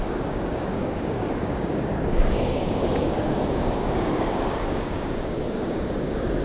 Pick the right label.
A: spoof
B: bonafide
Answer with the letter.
A